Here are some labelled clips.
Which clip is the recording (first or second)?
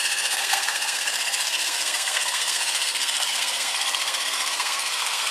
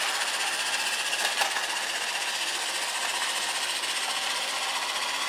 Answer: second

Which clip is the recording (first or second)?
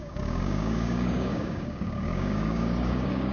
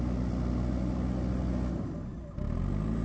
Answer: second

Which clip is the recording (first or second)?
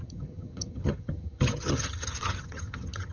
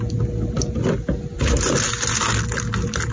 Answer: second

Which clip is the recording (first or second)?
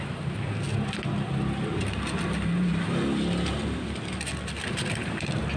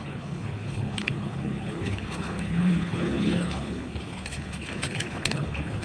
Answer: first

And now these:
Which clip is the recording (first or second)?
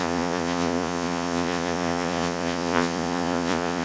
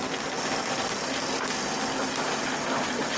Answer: second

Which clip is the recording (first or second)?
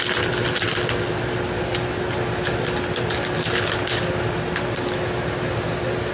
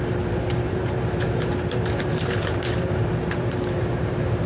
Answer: first